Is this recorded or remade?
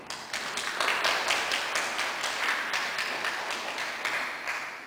recorded